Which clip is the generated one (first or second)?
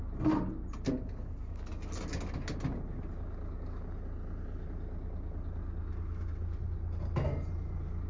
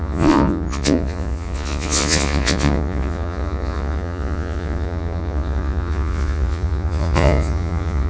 second